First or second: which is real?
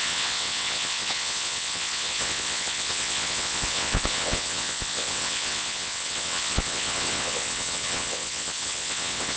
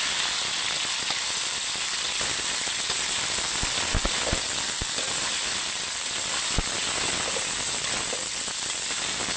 second